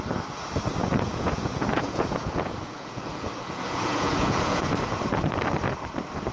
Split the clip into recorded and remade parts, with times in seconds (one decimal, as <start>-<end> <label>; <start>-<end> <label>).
0.0-0.8 recorded; 0.8-4.6 remade; 4.6-6.3 recorded